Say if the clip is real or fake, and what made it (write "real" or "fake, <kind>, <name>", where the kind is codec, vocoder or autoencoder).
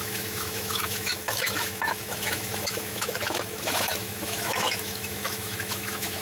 fake, autoencoder, DAC-VAE